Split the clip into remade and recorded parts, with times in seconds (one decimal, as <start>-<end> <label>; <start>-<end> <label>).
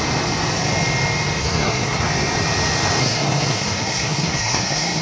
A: 0.0-1.4 recorded; 1.4-2.0 remade; 2.0-3.0 recorded; 3.0-5.0 remade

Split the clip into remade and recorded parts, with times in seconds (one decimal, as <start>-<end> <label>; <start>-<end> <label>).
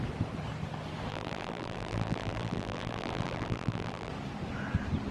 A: 0.0-1.1 recorded; 1.1-4.1 remade; 4.1-5.1 recorded